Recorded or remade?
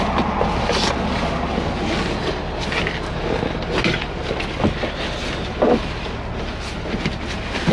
recorded